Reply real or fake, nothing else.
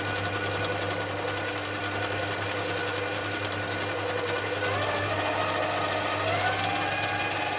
real